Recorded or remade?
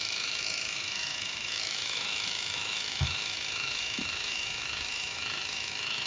remade